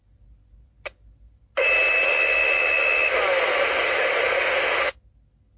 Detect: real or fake real